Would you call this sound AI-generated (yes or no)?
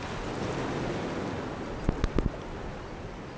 no